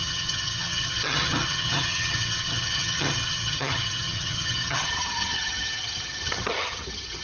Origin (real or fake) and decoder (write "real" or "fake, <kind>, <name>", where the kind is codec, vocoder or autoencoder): fake, vocoder, HiFi-GAN